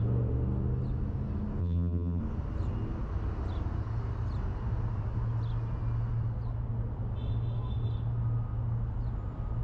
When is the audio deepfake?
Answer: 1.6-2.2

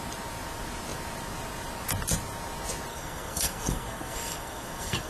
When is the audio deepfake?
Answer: 2.9-5.1

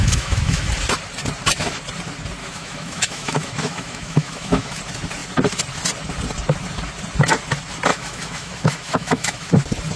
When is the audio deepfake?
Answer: 0.0-0.7; 2.4-4.8; 7.9-9.5

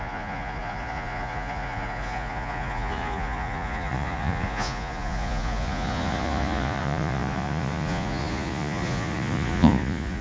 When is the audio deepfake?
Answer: 0.0-10.2

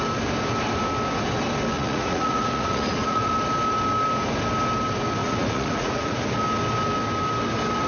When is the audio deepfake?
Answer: 1.7-3.3; 5.2-6.4